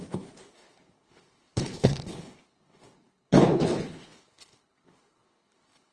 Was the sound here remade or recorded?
remade